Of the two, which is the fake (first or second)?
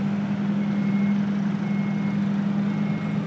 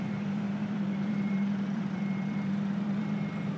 second